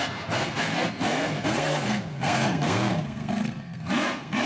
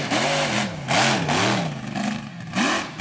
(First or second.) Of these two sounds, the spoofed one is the first